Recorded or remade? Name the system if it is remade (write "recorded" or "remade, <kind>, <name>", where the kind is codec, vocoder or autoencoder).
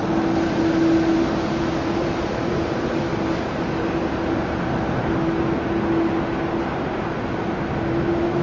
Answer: recorded